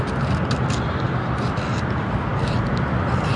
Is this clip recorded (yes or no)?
yes